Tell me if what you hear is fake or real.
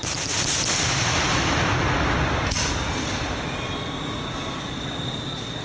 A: real